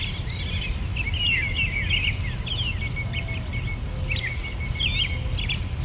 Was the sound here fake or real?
real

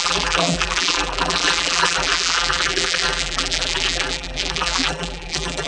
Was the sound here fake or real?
fake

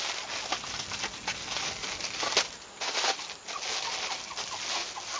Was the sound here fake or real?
real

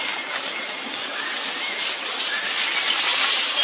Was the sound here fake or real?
real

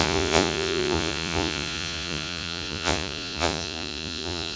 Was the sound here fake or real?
fake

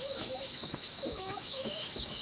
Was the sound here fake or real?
fake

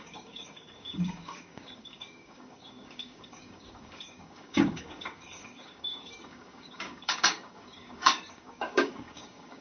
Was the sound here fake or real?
fake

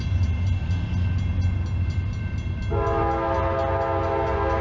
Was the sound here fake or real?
real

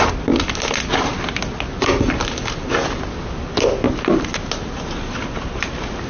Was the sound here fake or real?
real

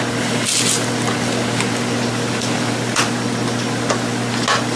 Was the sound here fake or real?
real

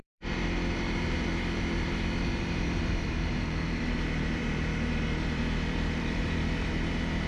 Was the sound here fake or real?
fake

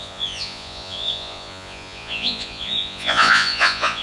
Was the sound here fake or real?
fake